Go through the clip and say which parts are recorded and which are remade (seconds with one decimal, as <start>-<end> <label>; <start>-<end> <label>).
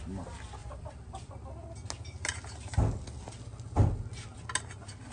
0.0-0.6 recorded; 0.6-1.3 remade; 1.3-5.1 recorded